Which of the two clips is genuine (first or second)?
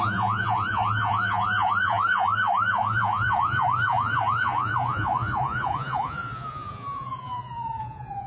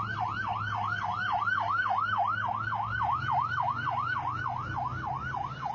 second